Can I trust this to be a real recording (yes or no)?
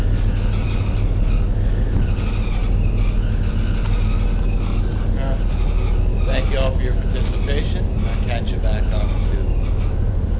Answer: yes